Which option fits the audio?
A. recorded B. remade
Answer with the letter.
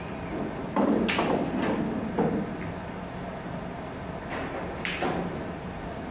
A